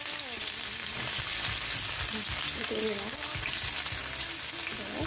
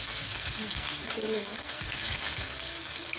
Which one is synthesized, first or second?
second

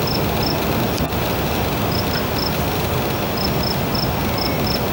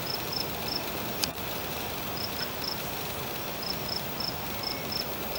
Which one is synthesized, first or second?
second